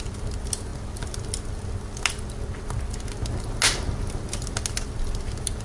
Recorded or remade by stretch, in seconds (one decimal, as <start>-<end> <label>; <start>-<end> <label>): 0.0-5.6 recorded